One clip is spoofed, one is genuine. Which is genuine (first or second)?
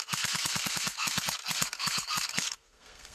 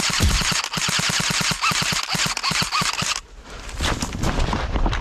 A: second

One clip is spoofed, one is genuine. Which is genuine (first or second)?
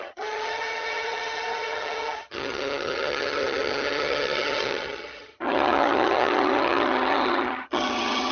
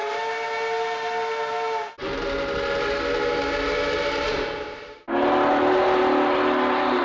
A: second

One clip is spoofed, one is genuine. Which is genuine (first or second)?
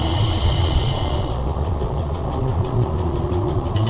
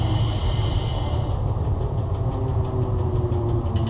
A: second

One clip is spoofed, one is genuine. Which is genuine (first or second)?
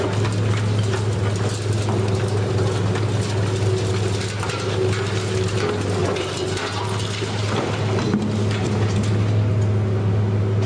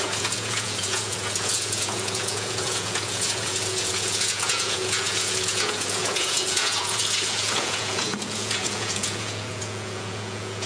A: first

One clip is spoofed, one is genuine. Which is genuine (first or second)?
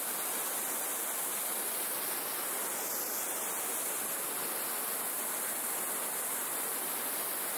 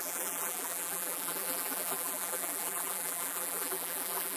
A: first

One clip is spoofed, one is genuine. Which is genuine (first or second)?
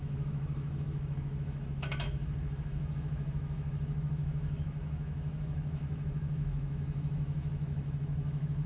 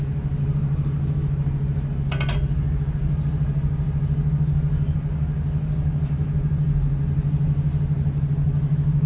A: second